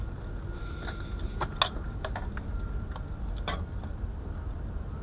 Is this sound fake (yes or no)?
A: no